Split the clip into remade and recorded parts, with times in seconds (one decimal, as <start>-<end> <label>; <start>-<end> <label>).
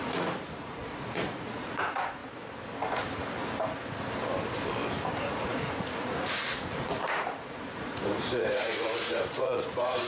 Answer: 0.0-2.2 remade; 2.2-5.2 recorded; 5.2-10.1 remade